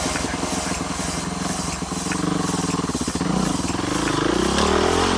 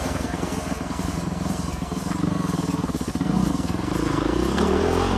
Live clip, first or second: first